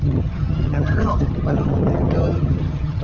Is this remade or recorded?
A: remade